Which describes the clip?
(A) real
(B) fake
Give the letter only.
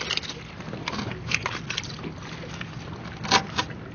A